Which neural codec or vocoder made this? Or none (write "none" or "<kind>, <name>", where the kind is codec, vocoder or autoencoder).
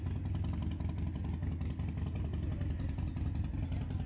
none